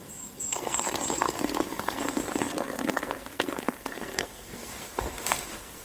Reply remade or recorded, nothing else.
remade